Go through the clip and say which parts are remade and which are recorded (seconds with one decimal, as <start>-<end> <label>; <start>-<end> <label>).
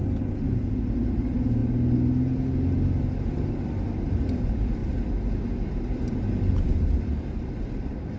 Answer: 0.0-1.1 recorded; 1.1-1.6 remade; 1.6-3.7 recorded; 3.7-4.8 remade; 4.8-6.4 recorded; 6.4-8.2 remade